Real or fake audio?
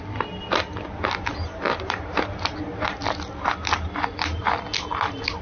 real